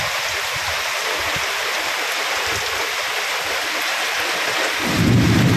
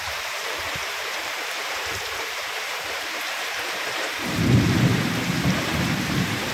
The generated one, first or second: second